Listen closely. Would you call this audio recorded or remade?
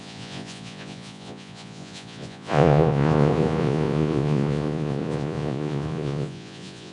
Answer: remade